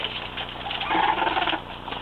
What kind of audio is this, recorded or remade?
recorded